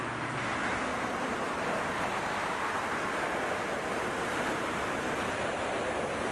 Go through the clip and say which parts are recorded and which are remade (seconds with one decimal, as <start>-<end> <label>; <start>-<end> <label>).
0.0-0.9 recorded; 0.9-4.7 remade; 4.7-6.3 recorded